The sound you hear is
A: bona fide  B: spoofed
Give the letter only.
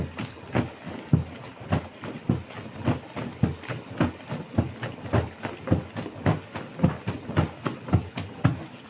A